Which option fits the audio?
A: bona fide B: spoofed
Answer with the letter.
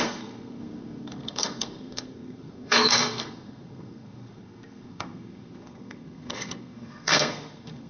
B